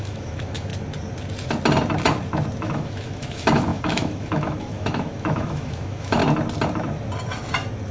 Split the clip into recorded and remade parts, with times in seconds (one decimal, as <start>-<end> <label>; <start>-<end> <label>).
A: 0.0-0.7 remade; 0.7-2.6 recorded; 2.6-6.2 remade; 6.2-7.9 recorded